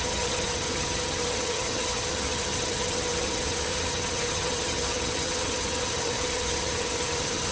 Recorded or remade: remade